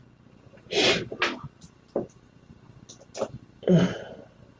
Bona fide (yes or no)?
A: yes